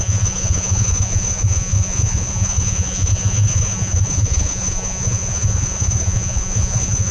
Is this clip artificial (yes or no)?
yes